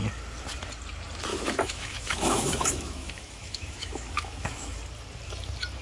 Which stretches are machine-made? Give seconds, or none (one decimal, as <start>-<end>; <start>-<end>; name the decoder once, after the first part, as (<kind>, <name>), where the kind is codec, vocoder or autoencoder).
1.3-4.8 (autoencoder, DAC-VAE)